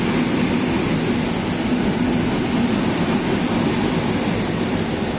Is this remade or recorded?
recorded